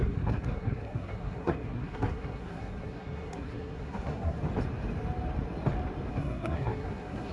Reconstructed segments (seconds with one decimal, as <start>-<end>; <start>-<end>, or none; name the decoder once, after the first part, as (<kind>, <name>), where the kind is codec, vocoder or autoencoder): 0.0-4.4 (codec, SNAC); 6.1-7.3